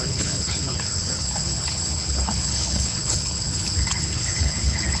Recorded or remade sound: remade